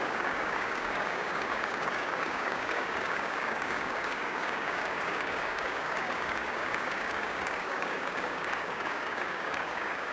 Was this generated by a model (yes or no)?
yes